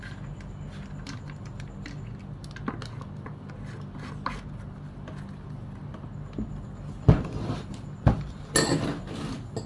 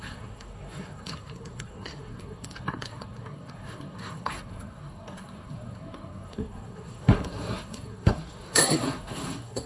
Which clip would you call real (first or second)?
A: first